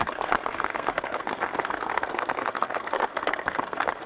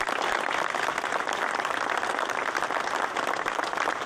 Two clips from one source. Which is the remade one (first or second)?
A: first